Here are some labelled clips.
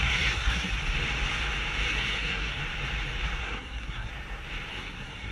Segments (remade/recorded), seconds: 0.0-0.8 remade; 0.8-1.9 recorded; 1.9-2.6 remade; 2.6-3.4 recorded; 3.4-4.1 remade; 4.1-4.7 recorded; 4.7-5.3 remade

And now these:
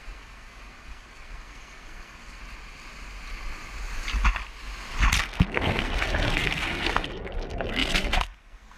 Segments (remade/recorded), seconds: 0.0-2.4 remade; 2.4-5.2 recorded; 5.2-8.8 remade

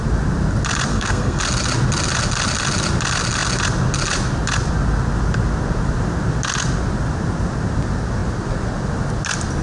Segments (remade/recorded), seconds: 0.0-0.9 recorded; 0.9-1.4 remade; 1.4-9.6 recorded

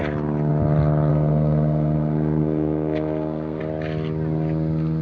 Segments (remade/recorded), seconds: 0.0-1.1 recorded; 1.1-3.6 remade; 3.6-5.0 recorded

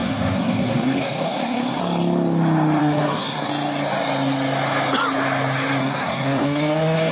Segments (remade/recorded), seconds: 0.0-1.8 remade; 1.8-2.8 recorded; 2.8-3.5 remade; 3.5-5.8 recorded; 5.8-7.1 remade

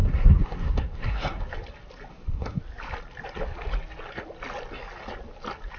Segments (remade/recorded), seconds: 0.0-1.4 remade; 1.4-2.1 recorded; 2.1-2.6 remade; 2.6-5.8 recorded

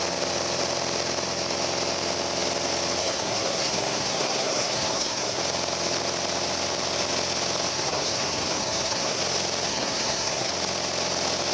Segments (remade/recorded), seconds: 0.0-3.0 recorded; 3.0-5.4 remade; 5.4-7.7 recorded; 7.7-9.2 remade; 9.2-9.7 recorded; 9.7-10.5 remade; 10.5-11.5 recorded

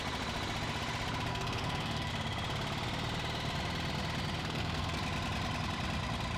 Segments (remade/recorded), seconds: 0.0-1.3 recorded; 1.3-2.1 remade; 2.1-4.4 recorded; 4.4-5.0 remade; 5.0-6.4 recorded